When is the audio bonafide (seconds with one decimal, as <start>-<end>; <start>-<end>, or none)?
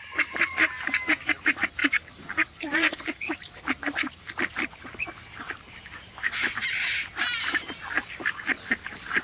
0.0-9.2